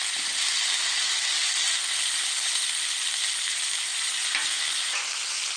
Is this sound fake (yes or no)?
no